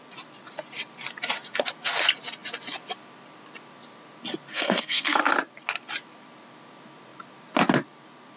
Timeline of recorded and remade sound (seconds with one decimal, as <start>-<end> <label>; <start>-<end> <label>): 0.0-4.5 recorded; 4.5-5.2 remade; 5.2-8.4 recorded